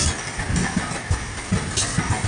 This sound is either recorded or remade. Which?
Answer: recorded